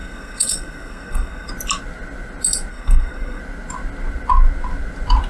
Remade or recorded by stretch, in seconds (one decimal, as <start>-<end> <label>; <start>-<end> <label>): 0.0-1.5 remade; 1.5-2.7 recorded; 2.7-3.4 remade; 3.4-5.3 recorded